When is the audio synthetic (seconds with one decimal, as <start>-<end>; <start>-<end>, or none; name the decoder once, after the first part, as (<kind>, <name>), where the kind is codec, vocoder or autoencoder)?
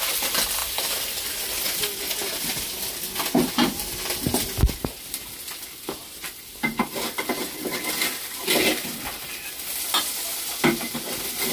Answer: none